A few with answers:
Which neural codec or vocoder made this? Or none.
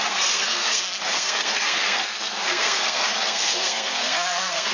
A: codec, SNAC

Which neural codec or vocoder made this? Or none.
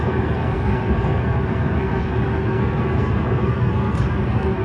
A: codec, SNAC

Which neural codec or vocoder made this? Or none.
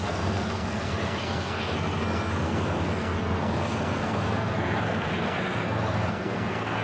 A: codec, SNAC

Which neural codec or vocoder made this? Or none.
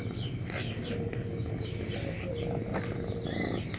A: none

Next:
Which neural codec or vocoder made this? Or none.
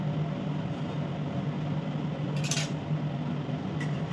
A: none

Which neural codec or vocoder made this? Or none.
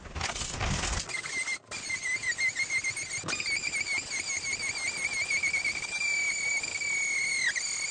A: none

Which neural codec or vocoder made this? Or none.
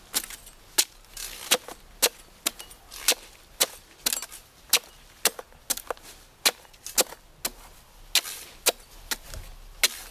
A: none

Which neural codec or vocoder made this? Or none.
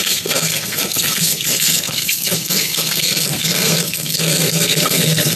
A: codec, SNAC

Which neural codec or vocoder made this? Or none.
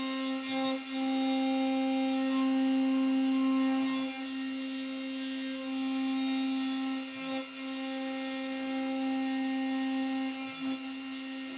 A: none